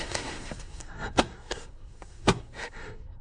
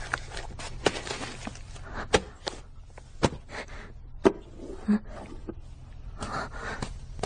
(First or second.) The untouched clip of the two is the second